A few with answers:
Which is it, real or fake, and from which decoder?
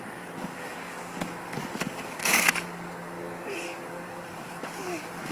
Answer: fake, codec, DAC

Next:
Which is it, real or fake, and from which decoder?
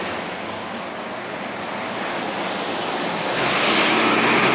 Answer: real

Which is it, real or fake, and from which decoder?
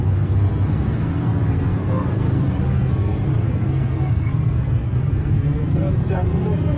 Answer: fake, codec, SNAC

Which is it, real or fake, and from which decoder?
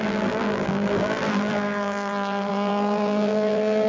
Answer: fake, vocoder, BigVGAN v2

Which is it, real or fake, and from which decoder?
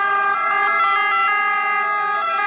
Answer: real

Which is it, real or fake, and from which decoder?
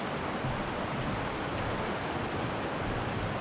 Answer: real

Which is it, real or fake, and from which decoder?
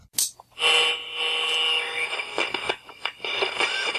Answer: real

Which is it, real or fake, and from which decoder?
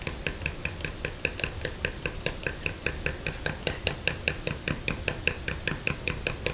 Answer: real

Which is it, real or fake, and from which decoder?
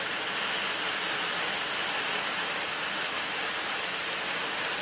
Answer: real